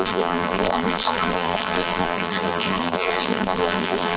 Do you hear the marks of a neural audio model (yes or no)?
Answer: yes